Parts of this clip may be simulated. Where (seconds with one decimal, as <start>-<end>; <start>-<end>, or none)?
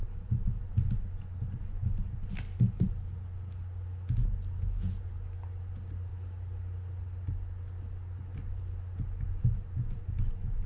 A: none